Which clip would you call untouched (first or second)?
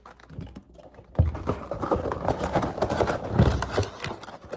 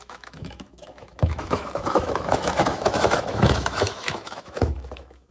first